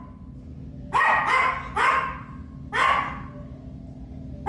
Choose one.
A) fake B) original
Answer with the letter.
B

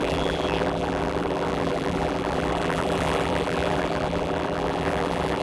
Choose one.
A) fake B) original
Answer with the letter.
A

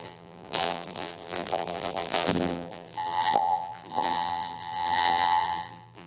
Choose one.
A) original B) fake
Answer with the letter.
B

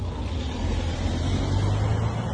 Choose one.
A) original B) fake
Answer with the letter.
A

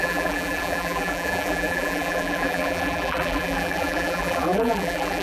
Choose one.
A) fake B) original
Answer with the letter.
A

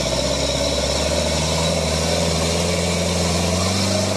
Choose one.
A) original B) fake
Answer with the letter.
A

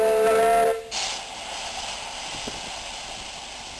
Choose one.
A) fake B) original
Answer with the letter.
B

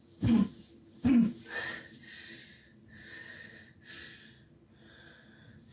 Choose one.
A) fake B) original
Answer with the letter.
A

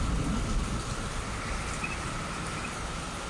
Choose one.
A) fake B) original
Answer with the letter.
B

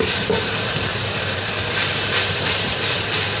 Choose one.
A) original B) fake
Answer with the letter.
B